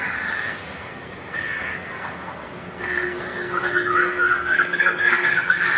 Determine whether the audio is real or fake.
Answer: fake